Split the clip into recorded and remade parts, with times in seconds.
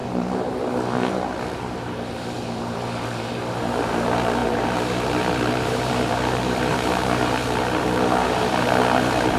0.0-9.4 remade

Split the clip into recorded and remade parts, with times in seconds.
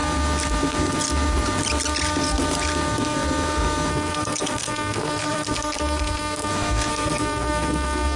0.0-3.9 recorded; 3.9-6.5 remade; 6.5-6.9 recorded; 6.9-8.2 remade